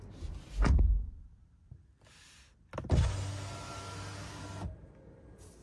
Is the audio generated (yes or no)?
no